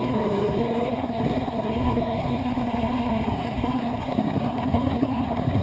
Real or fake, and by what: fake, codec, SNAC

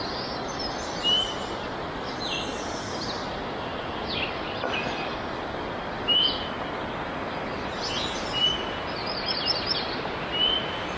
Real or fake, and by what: real